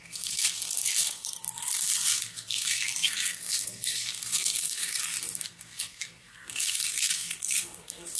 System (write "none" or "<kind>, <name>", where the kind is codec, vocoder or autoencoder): codec, SNAC